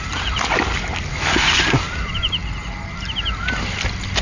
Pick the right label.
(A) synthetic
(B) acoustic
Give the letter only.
B